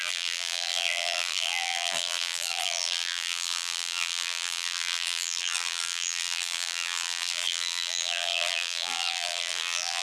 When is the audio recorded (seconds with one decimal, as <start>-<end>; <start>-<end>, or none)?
none